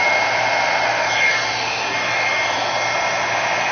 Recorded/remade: recorded